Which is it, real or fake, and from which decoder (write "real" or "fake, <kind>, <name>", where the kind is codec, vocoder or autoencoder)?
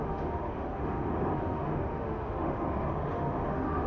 fake, autoencoder, DAC-VAE